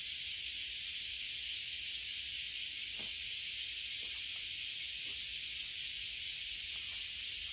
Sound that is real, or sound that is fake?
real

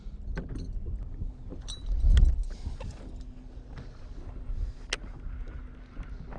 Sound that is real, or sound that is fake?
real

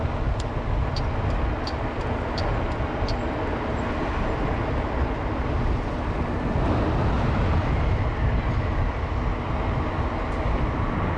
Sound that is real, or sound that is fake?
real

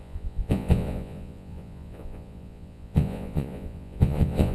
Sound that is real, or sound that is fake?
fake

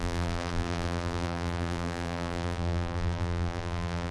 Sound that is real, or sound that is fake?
fake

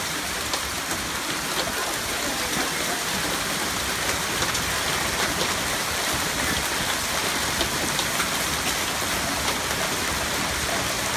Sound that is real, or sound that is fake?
real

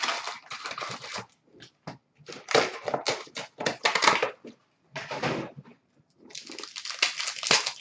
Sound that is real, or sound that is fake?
real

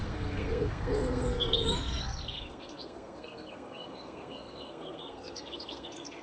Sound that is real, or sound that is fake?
fake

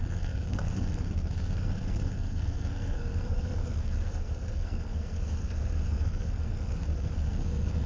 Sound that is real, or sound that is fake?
fake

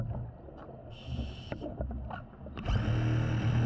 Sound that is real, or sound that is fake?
real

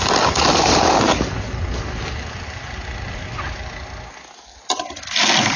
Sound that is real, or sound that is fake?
real